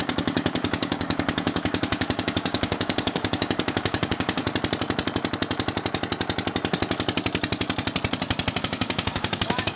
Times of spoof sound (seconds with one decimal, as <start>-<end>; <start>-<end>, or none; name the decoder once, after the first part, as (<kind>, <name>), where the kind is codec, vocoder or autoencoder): 0.0-4.4 (codec, DAC); 8.6-9.8